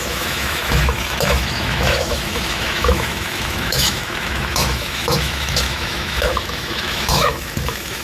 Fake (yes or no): yes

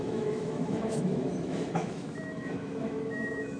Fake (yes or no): yes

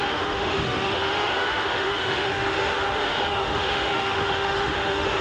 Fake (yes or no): yes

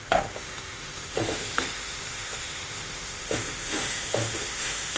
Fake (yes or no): yes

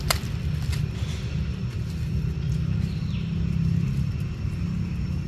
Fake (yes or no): no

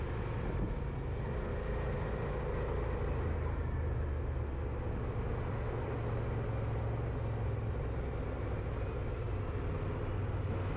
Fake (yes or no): no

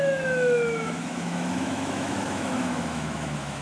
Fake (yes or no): yes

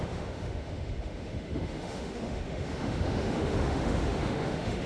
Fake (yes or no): yes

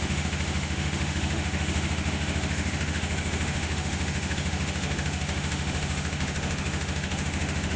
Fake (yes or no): yes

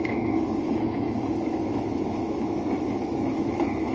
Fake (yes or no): yes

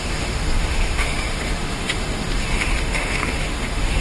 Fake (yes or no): yes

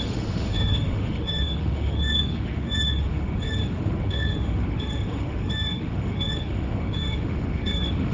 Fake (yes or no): yes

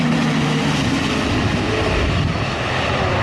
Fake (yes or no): no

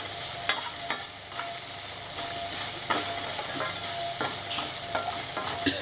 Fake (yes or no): no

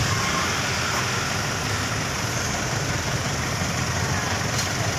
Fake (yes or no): no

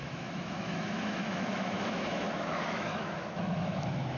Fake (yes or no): yes